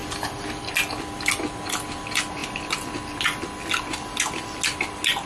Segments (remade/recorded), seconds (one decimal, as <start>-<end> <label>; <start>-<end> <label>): 0.0-0.7 remade; 0.7-5.3 recorded

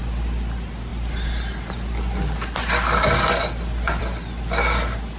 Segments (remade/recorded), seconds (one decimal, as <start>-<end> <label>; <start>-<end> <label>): 0.0-5.2 recorded